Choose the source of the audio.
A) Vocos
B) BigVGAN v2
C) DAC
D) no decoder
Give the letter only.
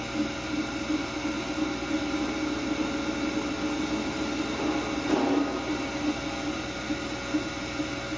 D